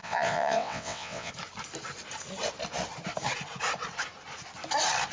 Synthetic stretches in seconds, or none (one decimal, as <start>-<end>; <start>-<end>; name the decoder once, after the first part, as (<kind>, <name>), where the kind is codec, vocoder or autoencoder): 0.0-1.3 (vocoder, WaveNeXt)